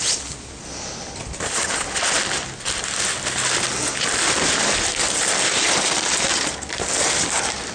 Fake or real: real